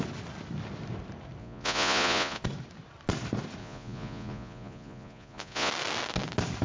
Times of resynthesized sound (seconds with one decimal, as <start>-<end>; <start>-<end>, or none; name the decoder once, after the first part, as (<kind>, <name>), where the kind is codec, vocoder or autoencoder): 1.4-2.4 (vocoder, Vocos); 3.6-5.7